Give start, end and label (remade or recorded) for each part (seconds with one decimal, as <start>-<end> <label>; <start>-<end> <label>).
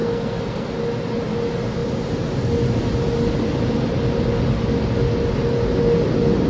0.0-0.7 remade; 0.7-6.5 recorded